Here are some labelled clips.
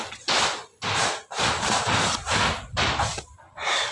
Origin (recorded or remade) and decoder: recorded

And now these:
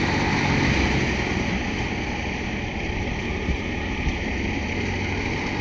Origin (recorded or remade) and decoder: recorded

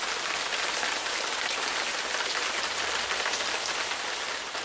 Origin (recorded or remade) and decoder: recorded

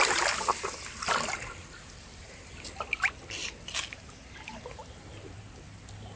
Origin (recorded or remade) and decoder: recorded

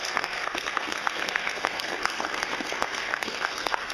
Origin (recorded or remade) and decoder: remade, codec, SNAC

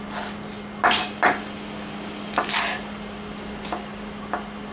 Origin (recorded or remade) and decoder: recorded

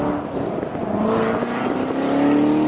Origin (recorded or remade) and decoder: recorded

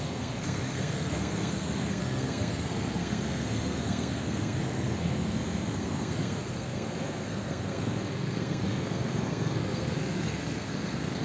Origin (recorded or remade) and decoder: remade, codec, SNAC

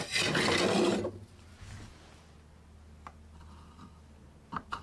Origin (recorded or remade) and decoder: recorded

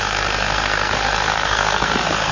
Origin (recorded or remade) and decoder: remade, codec, SNAC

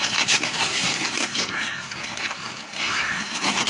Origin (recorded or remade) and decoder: remade, codec, SNAC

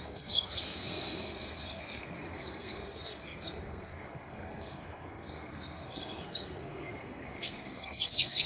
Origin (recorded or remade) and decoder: remade, codec, SNAC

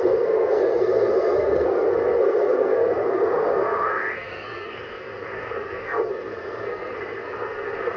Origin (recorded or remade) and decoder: remade, codec, SNAC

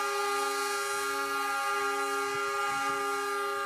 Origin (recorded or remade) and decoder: recorded